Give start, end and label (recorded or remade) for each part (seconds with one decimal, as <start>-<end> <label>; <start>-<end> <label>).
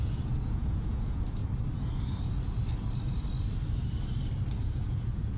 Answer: 0.0-1.4 remade; 1.4-4.6 recorded; 4.6-5.4 remade